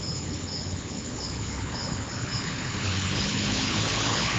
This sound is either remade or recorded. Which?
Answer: remade